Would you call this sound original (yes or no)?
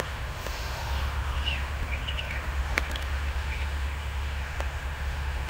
no